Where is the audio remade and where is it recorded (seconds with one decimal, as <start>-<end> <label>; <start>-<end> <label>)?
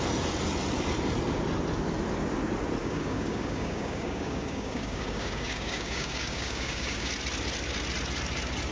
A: 0.0-2.8 recorded; 2.8-7.1 remade; 7.1-8.7 recorded